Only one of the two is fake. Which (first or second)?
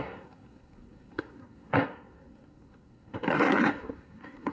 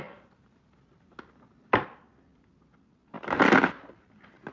first